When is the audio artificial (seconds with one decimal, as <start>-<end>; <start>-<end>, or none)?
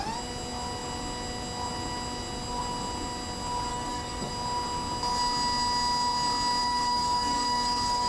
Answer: 3.7-4.3; 6.6-8.1